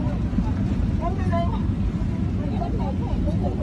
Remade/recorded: recorded